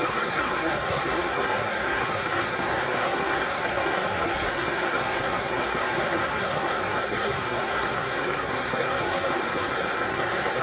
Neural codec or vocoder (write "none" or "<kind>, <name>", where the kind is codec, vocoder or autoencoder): codec, SNAC